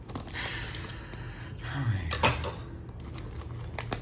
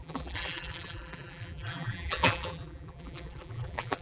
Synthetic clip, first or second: second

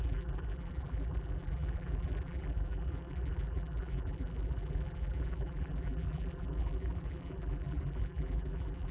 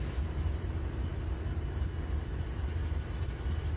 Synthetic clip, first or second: first